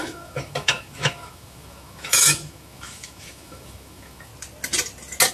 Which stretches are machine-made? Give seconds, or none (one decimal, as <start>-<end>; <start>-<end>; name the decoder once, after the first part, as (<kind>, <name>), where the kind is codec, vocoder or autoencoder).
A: 0.0-4.3 (autoencoder, DAC-VAE)